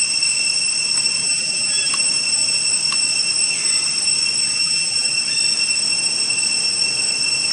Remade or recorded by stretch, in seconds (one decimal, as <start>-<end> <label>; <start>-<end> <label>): 0.0-1.2 recorded; 1.2-1.9 remade; 1.9-4.6 recorded; 4.6-5.1 remade; 5.1-7.5 recorded